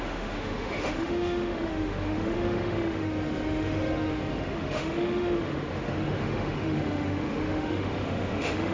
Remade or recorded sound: remade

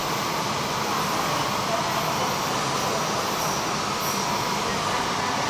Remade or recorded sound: recorded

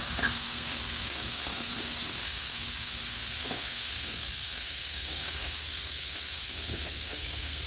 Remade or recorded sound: remade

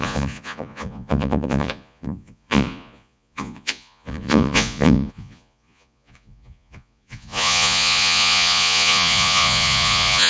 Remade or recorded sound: remade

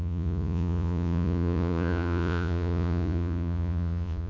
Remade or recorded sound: remade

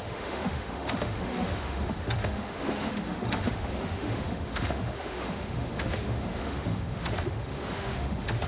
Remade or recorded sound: remade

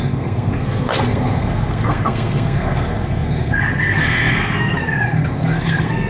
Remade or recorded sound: remade